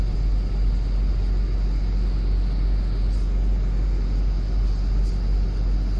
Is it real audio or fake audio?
real